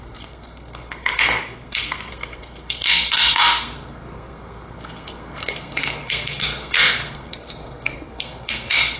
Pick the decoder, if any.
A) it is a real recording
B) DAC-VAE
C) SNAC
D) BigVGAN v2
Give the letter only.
C